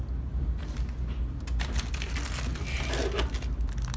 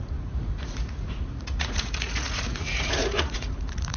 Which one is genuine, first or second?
first